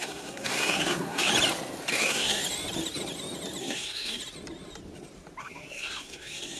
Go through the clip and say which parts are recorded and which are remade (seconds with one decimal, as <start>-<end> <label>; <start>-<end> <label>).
0.0-1.3 remade; 1.3-1.9 recorded; 1.9-2.4 remade; 2.4-3.6 recorded; 3.6-4.2 remade; 4.2-5.4 recorded; 5.4-6.6 remade